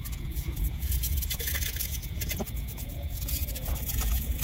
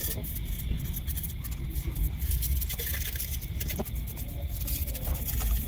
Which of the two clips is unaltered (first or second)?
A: second